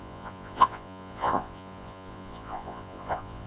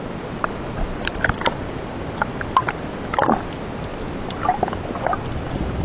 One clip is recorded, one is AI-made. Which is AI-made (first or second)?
first